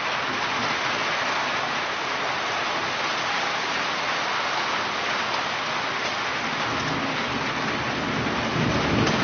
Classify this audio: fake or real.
real